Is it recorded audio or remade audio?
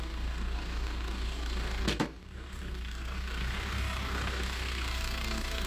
remade